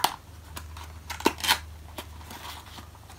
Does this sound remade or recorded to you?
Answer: recorded